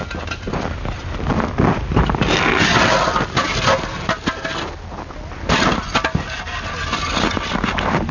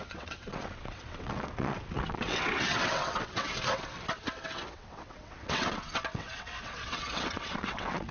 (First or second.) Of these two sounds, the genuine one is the first